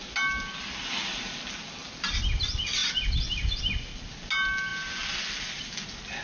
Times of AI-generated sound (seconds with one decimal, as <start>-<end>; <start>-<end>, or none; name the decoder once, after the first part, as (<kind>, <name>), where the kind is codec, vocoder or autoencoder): none